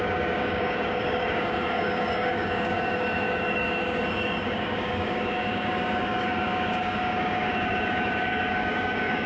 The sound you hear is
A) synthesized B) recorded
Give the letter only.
A